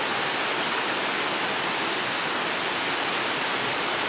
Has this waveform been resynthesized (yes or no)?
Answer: no